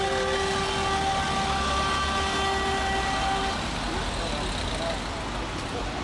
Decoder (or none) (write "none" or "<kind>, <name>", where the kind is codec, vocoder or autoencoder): none